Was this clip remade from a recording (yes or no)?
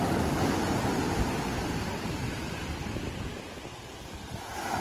no